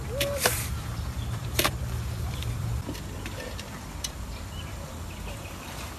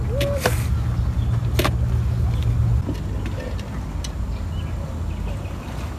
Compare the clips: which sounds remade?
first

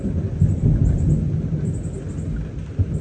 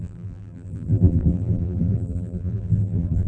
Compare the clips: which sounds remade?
second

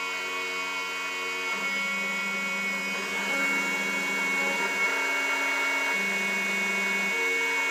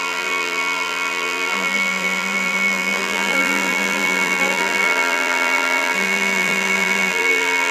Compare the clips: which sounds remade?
second